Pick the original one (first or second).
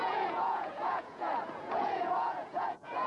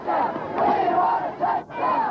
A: second